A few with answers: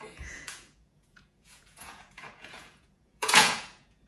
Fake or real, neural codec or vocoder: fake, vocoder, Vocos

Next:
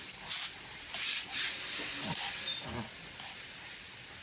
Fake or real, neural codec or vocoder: real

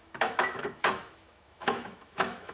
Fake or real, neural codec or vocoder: fake, autoencoder, DAC-VAE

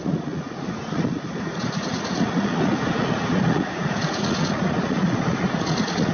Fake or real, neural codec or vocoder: fake, vocoder, Vocos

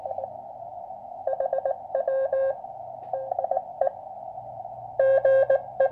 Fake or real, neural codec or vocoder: fake, vocoder, BigVGAN v2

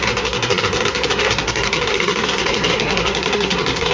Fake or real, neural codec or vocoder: fake, codec, SNAC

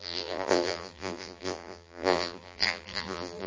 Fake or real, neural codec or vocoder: fake, vocoder, BigVGAN v2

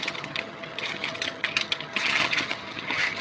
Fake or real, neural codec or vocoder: fake, vocoder, HiFi-GAN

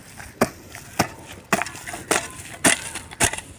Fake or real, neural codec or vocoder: real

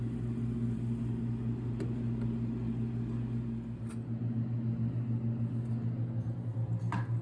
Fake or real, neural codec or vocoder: real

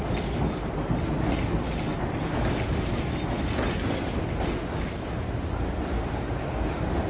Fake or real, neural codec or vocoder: real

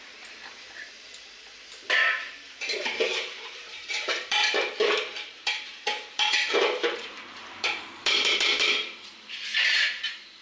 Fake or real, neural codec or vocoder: fake, vocoder, BigVGAN v2